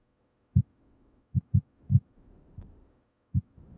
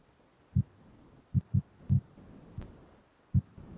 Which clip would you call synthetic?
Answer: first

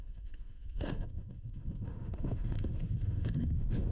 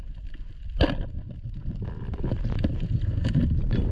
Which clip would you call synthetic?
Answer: first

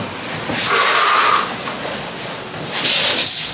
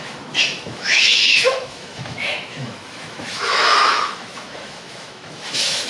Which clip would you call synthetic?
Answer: second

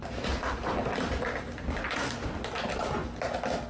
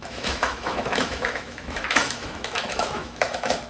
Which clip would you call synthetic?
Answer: second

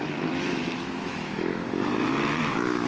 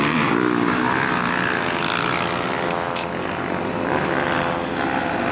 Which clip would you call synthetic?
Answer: first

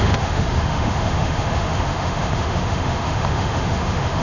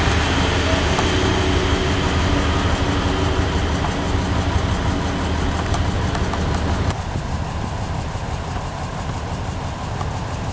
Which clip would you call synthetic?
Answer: first